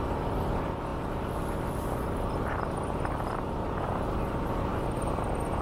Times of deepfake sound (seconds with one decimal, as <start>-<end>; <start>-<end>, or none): none